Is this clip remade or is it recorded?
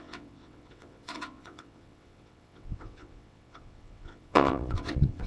remade